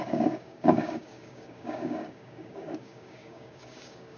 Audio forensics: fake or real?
fake